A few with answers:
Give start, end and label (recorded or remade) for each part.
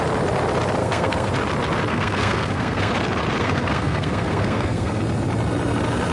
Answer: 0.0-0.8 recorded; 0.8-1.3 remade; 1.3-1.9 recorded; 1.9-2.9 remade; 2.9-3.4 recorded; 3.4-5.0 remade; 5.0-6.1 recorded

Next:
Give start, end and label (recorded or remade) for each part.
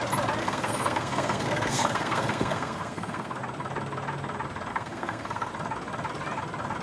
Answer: 0.0-0.4 recorded; 0.4-3.4 remade; 3.4-4.7 recorded; 4.7-5.5 remade; 5.5-6.8 recorded